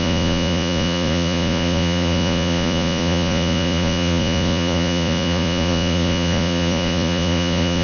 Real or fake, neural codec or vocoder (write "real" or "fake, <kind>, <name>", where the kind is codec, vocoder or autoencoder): fake, vocoder, Vocos